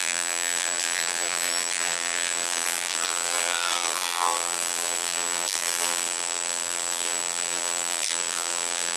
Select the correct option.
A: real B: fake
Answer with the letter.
B